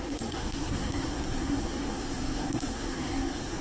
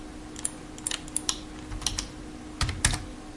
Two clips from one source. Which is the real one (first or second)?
second